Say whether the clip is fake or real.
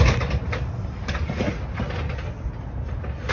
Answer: real